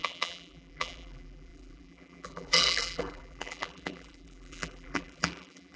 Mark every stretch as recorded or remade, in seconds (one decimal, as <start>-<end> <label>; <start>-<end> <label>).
0.0-5.8 remade